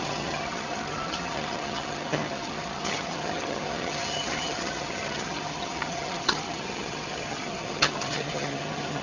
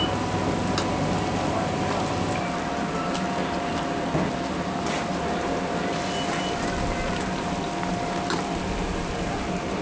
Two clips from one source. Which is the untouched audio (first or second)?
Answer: second